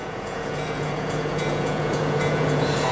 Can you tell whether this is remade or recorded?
remade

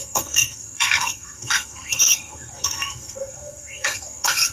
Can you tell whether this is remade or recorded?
remade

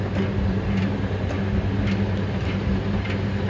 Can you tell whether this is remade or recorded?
recorded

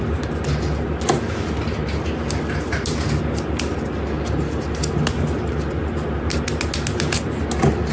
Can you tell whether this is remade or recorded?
recorded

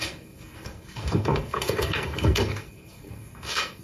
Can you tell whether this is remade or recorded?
remade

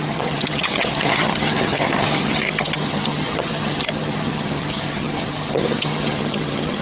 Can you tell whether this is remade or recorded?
remade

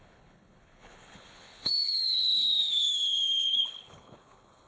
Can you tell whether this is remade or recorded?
remade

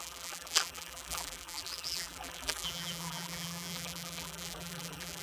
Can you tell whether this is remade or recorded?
remade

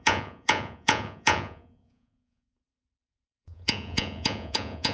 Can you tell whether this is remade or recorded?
remade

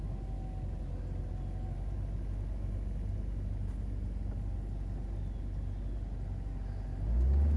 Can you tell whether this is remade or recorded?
recorded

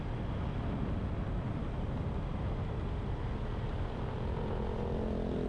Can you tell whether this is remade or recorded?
recorded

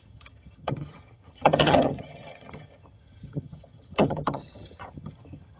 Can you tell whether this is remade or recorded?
remade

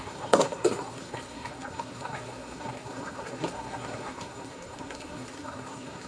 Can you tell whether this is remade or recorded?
remade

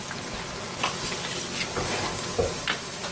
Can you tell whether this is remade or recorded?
recorded